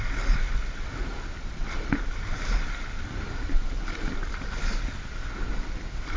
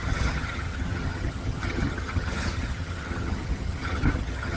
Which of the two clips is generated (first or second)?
second